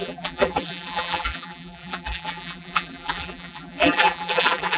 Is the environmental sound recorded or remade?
remade